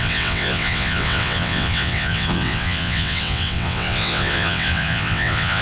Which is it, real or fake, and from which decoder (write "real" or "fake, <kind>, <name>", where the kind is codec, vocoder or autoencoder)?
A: fake, vocoder, WaveNeXt